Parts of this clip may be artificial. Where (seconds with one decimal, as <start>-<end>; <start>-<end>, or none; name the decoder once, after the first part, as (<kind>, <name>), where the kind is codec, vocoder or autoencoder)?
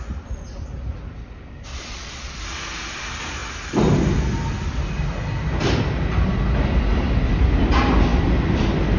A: 1.7-2.4 (vocoder, Vocos)